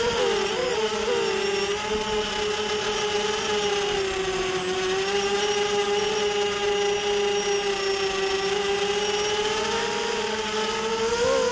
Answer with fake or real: real